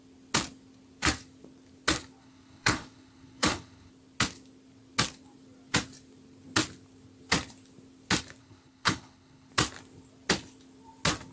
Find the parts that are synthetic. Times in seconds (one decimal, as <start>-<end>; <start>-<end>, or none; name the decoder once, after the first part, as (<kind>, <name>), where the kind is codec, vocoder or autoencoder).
2.2-3.9 (codec, HILCodec); 8.4-9.5